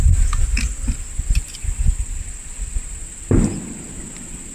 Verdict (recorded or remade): recorded